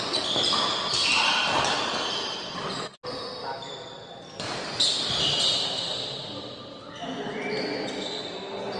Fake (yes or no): no